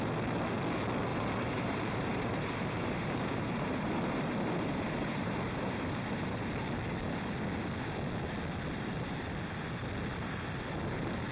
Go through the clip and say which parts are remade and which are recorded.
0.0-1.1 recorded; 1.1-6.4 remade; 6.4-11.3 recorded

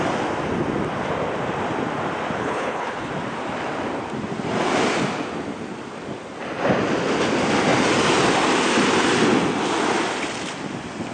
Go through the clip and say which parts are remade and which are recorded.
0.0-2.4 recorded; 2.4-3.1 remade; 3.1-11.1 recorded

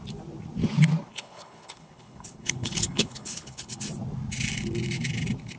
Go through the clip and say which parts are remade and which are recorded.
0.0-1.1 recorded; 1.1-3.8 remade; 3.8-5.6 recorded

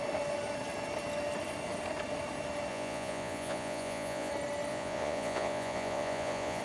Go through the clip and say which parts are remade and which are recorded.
0.0-2.7 recorded; 2.7-4.3 remade; 4.3-4.7 recorded; 4.7-6.6 remade

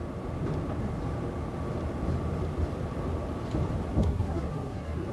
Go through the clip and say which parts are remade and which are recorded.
0.0-4.0 recorded; 4.0-5.1 remade